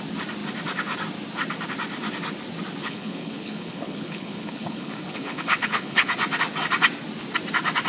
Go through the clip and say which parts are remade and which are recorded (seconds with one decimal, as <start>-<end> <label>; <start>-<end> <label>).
0.0-2.8 recorded; 2.8-6.1 remade; 6.1-7.9 recorded